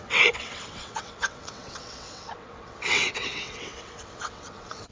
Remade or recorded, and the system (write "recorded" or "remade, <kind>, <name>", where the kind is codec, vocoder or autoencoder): remade, vocoder, WaveNeXt